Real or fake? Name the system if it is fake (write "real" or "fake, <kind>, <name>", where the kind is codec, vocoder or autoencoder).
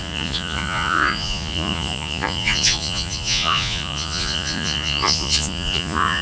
fake, vocoder, Vocos